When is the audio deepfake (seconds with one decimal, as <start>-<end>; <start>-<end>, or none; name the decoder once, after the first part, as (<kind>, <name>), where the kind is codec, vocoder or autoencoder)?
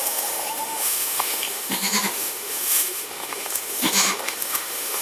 0.0-5.0 (autoencoder, DAC-VAE)